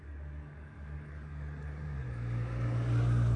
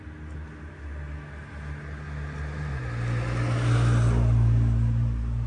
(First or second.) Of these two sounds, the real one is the second